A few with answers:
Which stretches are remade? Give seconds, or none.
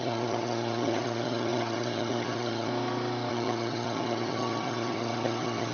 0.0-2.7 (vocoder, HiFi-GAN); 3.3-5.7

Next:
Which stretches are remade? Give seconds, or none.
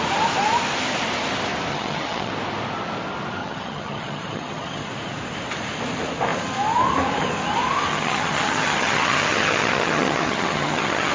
1.7-2.3 (vocoder, HiFi-GAN); 3.4-4.9; 7.9-11.1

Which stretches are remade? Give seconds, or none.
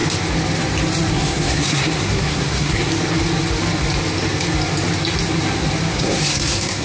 1.1-2.9 (codec, SNAC); 5.9-6.8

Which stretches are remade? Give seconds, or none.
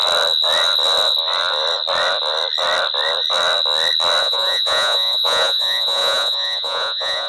4.2-7.3 (vocoder, Vocos)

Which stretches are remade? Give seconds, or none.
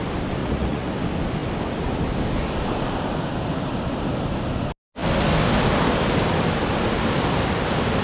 0.4-0.9 (vocoder, Vocos)